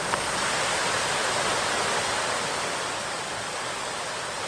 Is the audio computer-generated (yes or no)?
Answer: no